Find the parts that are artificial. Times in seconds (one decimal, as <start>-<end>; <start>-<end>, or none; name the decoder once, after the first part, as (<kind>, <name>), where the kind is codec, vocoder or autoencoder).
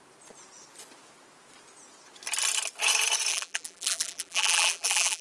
3.3-5.2 (vocoder, BigVGAN v2)